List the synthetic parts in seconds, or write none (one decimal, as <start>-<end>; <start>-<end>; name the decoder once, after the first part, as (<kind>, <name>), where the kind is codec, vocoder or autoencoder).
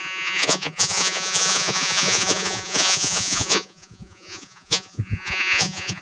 0.0-6.0 (vocoder, Vocos)